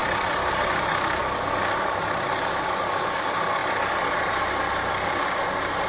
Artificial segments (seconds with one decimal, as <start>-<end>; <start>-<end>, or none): none